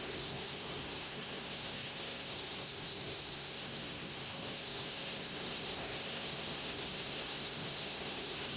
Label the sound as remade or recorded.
remade